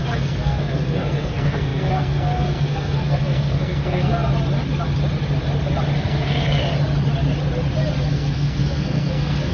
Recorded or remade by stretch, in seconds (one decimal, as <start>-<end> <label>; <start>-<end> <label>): 0.0-4.3 remade; 4.3-6.0 recorded; 6.0-6.6 remade; 6.6-8.1 recorded; 8.1-9.5 remade